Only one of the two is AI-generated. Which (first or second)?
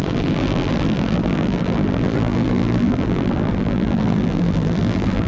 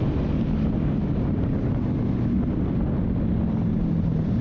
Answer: first